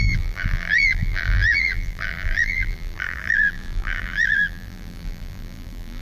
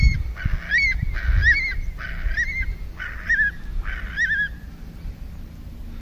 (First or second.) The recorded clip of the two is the second